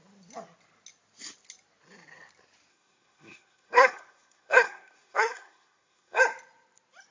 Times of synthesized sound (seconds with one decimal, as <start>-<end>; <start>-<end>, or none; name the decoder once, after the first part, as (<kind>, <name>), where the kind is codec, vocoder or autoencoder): 2.7-6.2 (codec, SNAC)